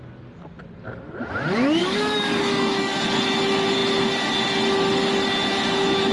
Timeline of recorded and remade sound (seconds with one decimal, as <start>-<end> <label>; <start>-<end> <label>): 0.0-1.8 recorded; 1.8-3.0 remade; 3.0-6.1 recorded